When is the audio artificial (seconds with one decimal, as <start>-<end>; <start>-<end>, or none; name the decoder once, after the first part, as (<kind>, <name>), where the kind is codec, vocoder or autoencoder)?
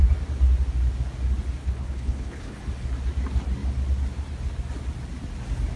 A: 1.6-2.6 (codec, HILCodec)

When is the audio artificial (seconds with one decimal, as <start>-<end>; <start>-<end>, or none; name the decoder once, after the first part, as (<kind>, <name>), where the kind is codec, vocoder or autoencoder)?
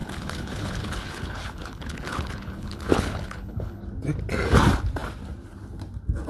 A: 0.0-3.8 (codec, HILCodec)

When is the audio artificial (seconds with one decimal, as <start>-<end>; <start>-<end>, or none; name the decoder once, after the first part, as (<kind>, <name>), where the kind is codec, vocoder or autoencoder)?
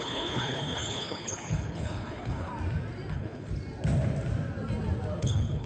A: 0.0-2.5 (codec, HILCodec); 3.1-3.5; 5.2-5.7